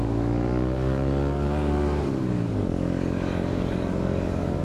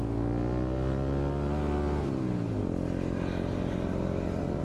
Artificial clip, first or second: first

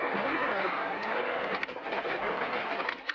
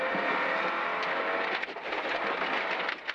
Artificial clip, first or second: first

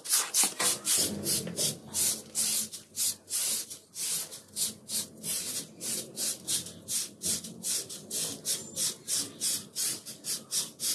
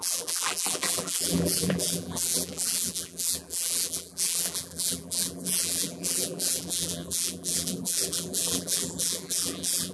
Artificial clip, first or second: second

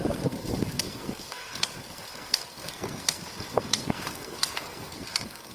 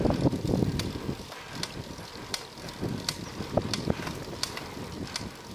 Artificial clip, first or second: first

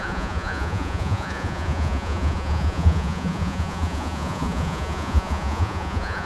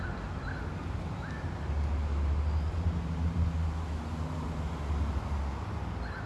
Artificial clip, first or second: first